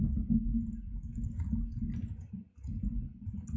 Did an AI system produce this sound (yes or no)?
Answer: no